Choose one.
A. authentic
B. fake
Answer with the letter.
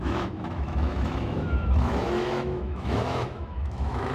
B